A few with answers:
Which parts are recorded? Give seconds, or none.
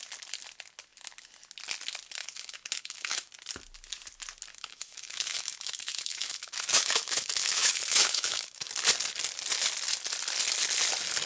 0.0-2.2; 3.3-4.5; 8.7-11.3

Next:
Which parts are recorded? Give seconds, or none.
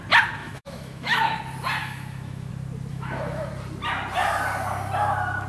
0.0-0.4; 1.4-1.8; 2.5-2.9; 3.5-5.5